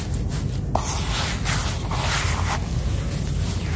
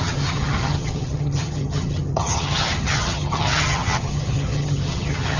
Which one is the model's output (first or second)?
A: second